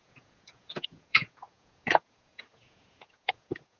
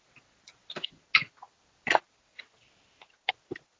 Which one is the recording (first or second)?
second